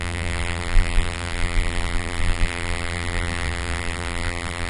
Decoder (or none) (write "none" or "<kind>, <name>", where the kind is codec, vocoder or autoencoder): vocoder, BigVGAN v2